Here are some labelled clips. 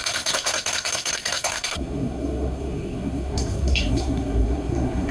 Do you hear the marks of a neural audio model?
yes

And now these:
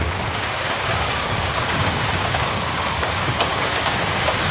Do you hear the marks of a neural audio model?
yes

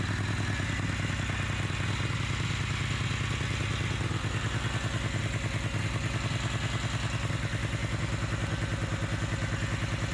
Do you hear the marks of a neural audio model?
no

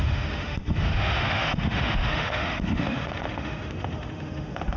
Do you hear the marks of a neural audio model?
yes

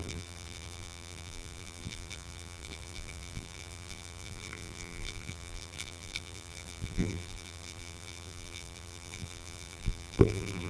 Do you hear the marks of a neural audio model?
yes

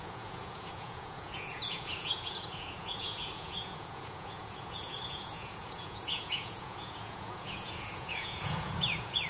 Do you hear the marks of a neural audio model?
yes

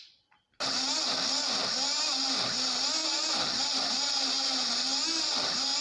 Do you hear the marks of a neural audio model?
no